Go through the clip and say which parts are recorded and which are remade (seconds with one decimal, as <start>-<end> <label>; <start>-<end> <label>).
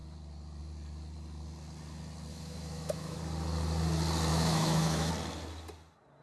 0.0-2.3 recorded; 2.3-3.2 remade; 3.2-4.3 recorded; 4.3-5.1 remade; 5.1-6.2 recorded